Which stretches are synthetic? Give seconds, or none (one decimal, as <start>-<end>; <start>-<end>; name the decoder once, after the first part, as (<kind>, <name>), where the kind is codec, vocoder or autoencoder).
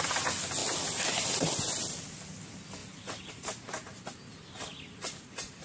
none